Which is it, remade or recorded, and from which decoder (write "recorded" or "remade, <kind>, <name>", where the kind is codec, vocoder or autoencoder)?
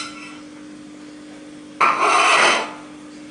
recorded